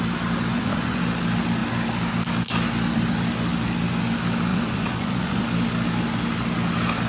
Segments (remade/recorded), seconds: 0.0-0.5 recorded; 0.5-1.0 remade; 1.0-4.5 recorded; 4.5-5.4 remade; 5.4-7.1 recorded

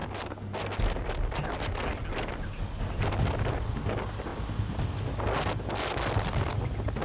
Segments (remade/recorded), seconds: 0.0-7.0 recorded

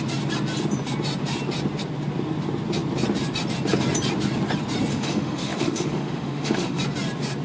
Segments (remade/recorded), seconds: 0.0-4.9 recorded; 4.9-6.8 remade; 6.8-7.4 recorded

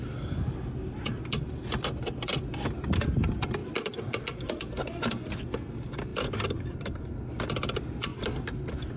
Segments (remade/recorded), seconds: 0.0-6.1 recorded; 6.1-7.0 remade; 7.0-9.0 recorded

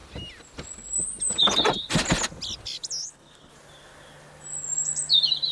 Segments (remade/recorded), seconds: 0.0-3.0 recorded; 3.0-3.5 remade; 3.5-5.5 recorded

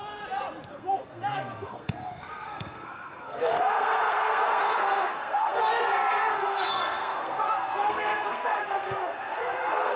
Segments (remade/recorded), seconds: 0.0-0.7 recorded; 0.7-10.0 remade